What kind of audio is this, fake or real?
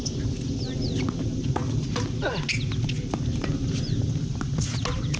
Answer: real